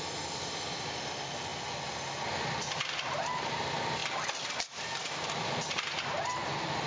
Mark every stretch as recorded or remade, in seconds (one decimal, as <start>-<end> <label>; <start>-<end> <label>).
0.0-6.9 recorded